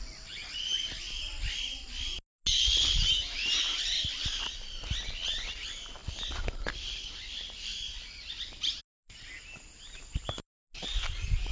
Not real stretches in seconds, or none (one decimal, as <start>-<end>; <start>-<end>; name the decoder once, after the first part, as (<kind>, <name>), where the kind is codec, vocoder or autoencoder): none